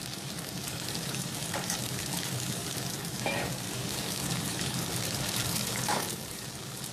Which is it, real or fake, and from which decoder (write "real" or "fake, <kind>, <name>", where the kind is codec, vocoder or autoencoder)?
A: fake, codec, DAC